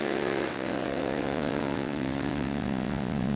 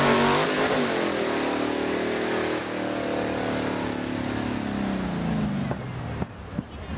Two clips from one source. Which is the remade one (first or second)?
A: first